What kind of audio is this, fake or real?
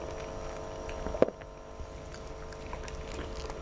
real